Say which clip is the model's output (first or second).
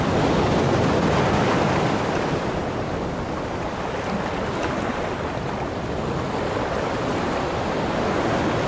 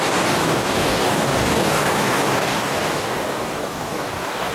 second